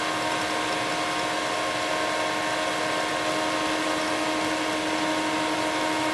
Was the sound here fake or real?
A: real